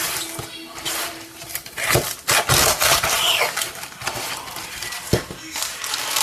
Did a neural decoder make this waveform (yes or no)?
no